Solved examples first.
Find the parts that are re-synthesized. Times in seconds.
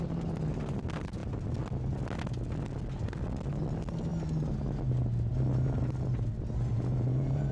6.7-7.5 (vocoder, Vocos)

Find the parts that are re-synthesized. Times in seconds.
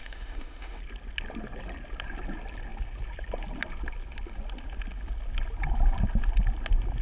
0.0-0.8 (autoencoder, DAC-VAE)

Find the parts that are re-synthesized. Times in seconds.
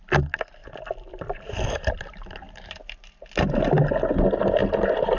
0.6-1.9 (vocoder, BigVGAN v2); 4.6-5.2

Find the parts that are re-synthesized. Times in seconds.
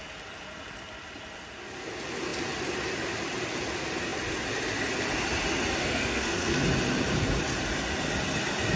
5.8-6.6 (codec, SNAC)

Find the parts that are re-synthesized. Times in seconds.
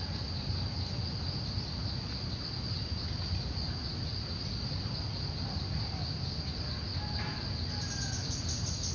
none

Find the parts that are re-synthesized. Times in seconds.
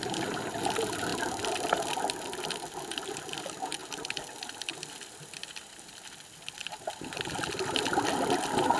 none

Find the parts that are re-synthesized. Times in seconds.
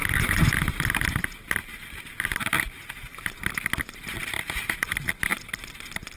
1.6-2.5 (vocoder, BigVGAN v2)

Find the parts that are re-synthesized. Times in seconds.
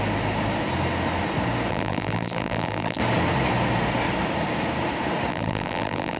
1.7-3.0 (vocoder, BigVGAN v2); 5.3-6.2